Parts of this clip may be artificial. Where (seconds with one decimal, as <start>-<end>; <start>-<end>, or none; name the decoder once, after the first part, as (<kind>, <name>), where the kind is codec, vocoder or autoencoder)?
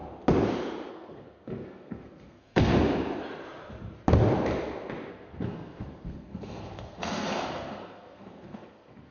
0.9-2.7 (codec, SNAC); 5.1-9.1